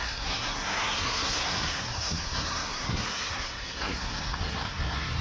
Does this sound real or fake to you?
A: fake